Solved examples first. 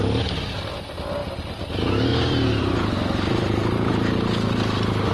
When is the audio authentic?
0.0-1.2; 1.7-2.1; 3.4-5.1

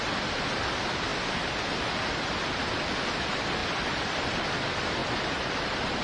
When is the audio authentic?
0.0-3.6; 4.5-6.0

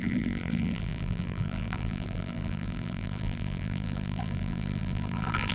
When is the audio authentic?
none